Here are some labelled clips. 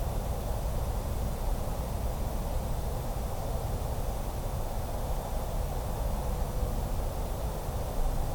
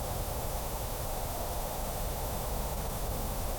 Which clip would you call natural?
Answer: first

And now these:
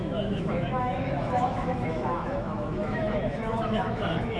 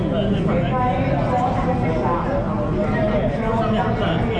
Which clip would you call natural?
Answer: second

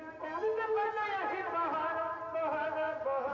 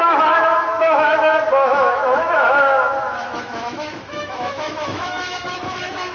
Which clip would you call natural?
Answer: first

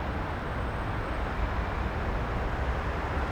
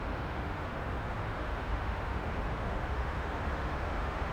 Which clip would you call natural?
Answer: first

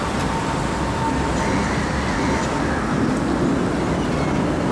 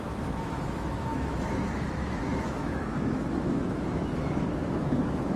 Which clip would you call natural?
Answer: first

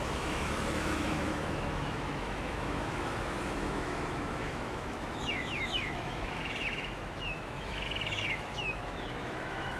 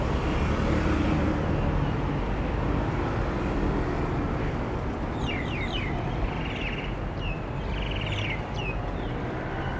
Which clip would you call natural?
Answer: second